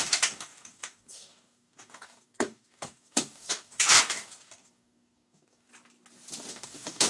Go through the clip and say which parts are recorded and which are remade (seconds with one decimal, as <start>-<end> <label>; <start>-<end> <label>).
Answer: 0.0-5.7 remade; 5.7-6.5 recorded; 6.5-7.1 remade